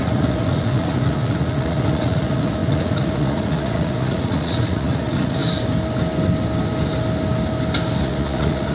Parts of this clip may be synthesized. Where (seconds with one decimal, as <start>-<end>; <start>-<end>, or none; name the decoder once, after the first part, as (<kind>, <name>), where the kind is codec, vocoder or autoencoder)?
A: 0.0-5.4 (vocoder, Vocos); 8.0-8.7